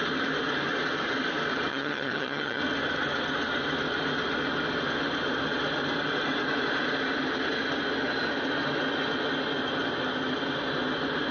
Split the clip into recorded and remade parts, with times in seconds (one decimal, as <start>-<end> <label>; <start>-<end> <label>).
0.0-1.7 recorded; 1.7-2.6 remade; 2.6-11.3 recorded